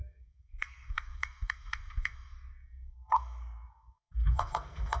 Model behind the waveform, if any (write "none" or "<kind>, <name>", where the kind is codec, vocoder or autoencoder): codec, SNAC